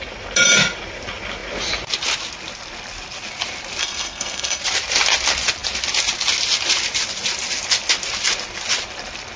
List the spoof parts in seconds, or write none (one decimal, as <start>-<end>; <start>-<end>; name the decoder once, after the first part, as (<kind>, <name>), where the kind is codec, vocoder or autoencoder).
3.8-4.6 (codec, SNAC)